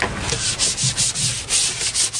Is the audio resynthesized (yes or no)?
no